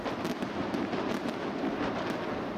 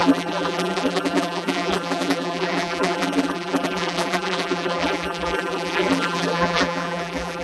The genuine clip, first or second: first